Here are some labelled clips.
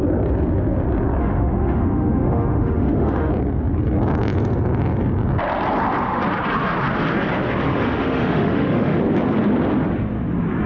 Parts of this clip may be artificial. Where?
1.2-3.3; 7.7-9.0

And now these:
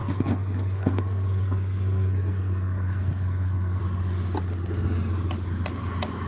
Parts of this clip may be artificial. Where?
0.0-3.8

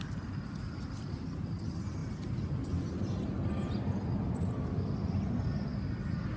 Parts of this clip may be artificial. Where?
none

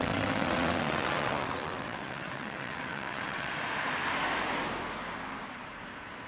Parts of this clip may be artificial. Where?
0.0-3.5

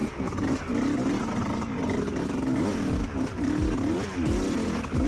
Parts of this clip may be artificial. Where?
0.0-0.5